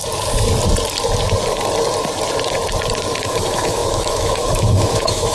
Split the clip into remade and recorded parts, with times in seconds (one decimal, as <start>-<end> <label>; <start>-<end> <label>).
0.0-3.2 recorded; 3.2-5.3 remade

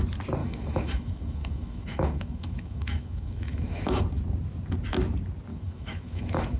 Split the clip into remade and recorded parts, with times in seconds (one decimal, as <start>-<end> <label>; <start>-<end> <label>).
0.0-0.4 recorded; 0.4-4.0 remade; 4.0-5.5 recorded; 5.5-6.6 remade